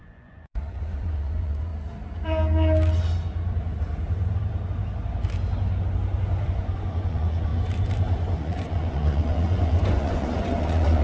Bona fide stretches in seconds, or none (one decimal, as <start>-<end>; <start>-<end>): 1.7-6.4; 7.5-8.4